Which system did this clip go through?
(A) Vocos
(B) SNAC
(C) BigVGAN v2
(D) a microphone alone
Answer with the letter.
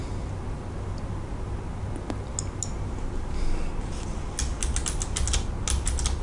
D